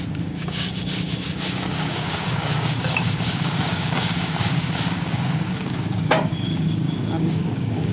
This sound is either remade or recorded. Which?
remade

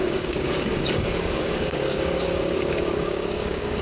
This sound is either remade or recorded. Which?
remade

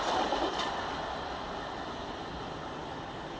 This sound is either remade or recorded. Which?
recorded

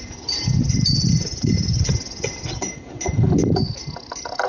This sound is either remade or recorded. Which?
recorded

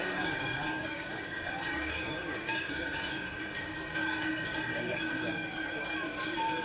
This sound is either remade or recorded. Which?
remade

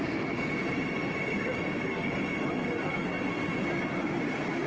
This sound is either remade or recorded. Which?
recorded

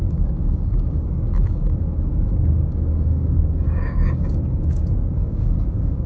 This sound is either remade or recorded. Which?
remade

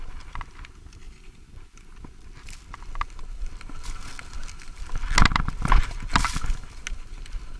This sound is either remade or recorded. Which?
recorded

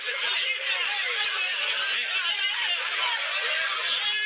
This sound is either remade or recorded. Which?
recorded